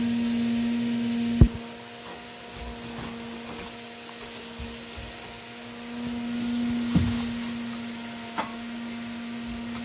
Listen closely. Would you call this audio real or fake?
real